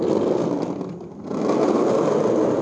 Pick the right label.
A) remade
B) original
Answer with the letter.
B